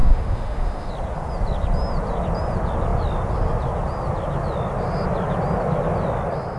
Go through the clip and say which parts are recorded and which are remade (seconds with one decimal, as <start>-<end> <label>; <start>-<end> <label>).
0.0-0.9 remade; 0.9-6.6 recorded